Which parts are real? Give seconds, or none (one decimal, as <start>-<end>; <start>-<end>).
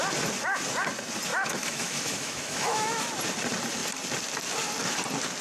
0.0-1.3; 3.1-5.4